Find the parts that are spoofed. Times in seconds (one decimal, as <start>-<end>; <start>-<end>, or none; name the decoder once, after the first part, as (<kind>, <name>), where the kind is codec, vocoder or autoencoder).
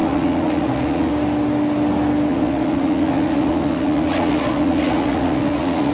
0.0-1.1 (vocoder, Vocos); 2.3-5.9